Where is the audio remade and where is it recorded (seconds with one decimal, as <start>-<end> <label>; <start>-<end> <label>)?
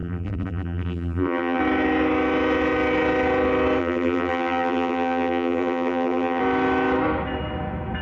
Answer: 0.0-1.6 remade; 1.6-3.8 recorded; 3.8-6.4 remade; 6.4-8.0 recorded